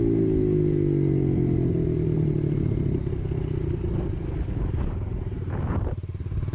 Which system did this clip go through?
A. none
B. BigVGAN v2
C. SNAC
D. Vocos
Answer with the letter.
A